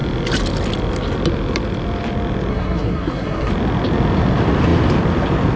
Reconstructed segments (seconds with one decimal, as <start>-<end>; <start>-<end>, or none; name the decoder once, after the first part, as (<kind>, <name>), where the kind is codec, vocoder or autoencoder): 2.5-3.5 (codec, SNAC)